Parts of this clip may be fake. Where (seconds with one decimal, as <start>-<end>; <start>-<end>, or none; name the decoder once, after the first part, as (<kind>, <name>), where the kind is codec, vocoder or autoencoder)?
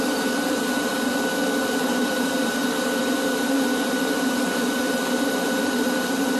0.0-0.9 (vocoder, BigVGAN v2); 1.6-6.4